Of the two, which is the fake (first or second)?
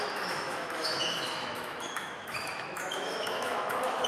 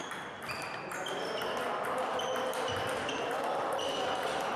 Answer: first